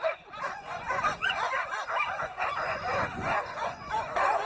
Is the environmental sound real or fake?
fake